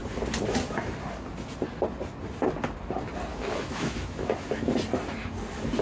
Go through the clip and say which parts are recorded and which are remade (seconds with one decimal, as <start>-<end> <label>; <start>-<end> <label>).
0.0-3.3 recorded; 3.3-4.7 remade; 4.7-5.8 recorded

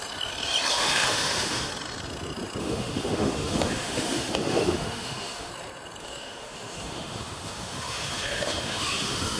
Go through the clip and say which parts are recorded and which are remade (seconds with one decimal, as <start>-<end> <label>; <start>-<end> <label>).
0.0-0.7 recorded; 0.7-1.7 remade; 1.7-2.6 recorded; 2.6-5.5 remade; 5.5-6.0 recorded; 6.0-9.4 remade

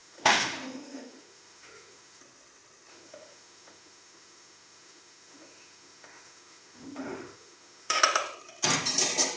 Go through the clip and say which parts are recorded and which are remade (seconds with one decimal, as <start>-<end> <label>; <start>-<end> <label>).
0.0-2.2 remade; 2.2-2.9 recorded; 2.9-8.0 remade; 8.0-9.4 recorded